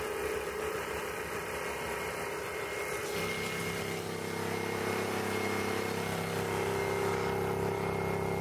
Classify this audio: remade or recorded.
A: recorded